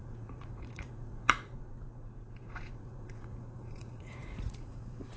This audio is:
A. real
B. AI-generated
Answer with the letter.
B